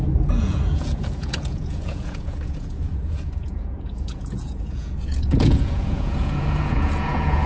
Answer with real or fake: fake